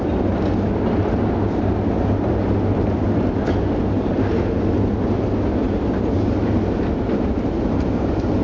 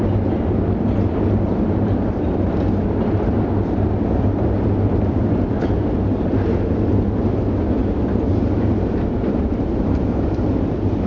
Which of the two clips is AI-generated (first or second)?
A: second